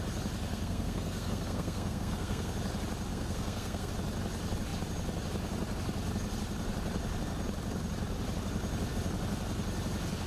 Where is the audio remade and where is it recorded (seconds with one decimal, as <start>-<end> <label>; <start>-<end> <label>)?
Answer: 0.0-0.5 recorded; 0.5-2.5 remade; 2.5-3.1 recorded; 3.1-3.9 remade; 3.9-10.3 recorded